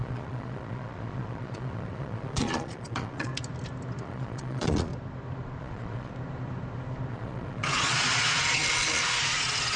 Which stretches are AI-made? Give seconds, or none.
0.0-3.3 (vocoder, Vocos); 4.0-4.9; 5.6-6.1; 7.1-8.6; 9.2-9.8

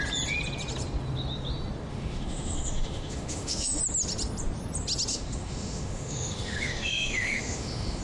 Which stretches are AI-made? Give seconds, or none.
1.9-3.8 (autoencoder, DAC-VAE); 5.1-8.0

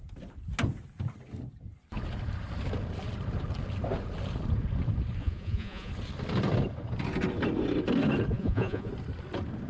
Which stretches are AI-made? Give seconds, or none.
5.2-5.9 (vocoder, Vocos); 8.3-8.9

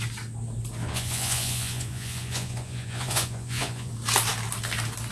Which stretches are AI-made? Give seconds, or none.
0.8-3.9 (vocoder, Vocos)